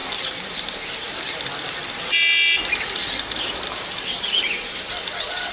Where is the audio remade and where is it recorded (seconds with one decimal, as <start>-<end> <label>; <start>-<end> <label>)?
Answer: 0.0-3.0 recorded; 3.0-4.9 remade; 4.9-5.5 recorded